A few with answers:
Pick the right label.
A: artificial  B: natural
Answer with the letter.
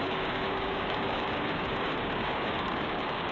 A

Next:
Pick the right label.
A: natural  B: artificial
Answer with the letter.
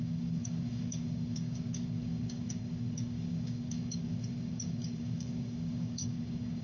B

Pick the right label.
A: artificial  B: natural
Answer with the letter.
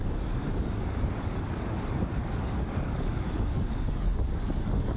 A